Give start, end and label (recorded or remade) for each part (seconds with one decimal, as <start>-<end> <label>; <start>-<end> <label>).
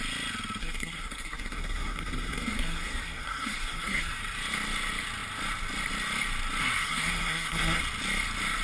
0.0-0.6 recorded; 0.6-4.2 remade; 4.2-6.6 recorded; 6.6-7.8 remade; 7.8-8.6 recorded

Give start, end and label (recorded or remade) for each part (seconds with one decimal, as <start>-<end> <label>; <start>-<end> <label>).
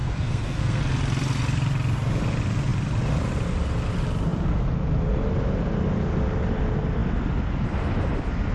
0.0-0.8 remade; 0.8-8.5 recorded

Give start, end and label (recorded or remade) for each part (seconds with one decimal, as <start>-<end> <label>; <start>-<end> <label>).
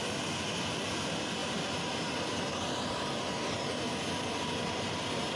0.0-5.4 recorded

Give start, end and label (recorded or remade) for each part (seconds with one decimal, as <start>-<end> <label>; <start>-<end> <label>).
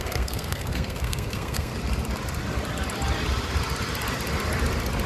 0.0-1.7 remade; 1.7-5.1 recorded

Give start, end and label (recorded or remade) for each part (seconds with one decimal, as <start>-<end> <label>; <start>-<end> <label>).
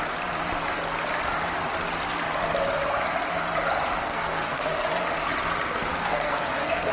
0.0-4.0 recorded; 4.0-4.7 remade; 4.7-5.9 recorded; 5.9-6.9 remade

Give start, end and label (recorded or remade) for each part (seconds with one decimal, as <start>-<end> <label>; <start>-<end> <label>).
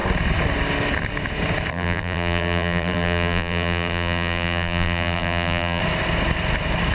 0.0-1.7 recorded; 1.7-5.8 remade; 5.8-6.9 recorded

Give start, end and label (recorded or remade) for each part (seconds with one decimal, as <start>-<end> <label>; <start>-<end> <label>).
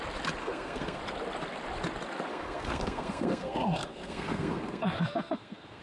0.0-0.4 recorded; 0.4-1.0 remade; 1.0-2.3 recorded; 2.3-5.8 remade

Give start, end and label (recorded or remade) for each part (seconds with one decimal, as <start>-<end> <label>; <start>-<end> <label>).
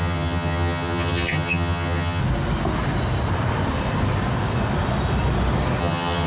0.0-2.2 remade; 2.2-5.8 recorded; 5.8-6.3 remade